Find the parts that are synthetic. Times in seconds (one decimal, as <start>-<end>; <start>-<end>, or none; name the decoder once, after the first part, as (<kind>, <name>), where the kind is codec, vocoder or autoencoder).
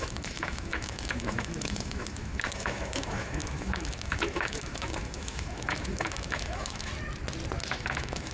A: 0.0-6.9 (autoencoder, DAC-VAE); 7.7-8.3